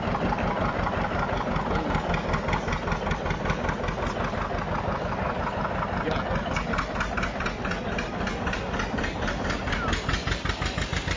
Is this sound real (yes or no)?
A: yes